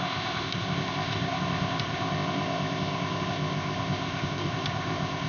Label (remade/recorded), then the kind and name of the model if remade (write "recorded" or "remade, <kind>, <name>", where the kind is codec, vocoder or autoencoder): remade, codec, ZipCodec